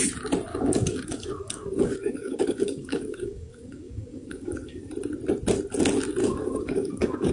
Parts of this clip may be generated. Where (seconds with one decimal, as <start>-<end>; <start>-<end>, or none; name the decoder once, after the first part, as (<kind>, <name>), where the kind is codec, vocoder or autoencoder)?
0.5-4.9 (codec, DAC); 6.2-7.3